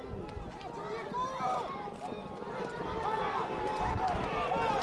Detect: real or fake real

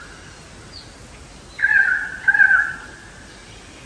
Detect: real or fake real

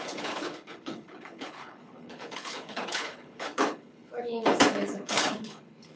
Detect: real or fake fake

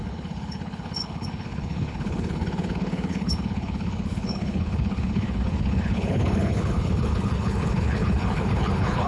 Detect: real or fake fake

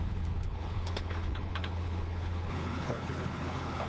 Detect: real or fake fake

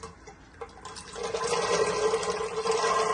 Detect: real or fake real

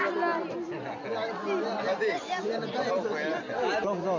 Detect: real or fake real